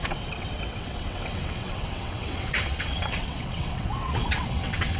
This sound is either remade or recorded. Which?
remade